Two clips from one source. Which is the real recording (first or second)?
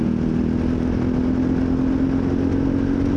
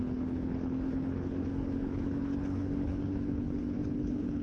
first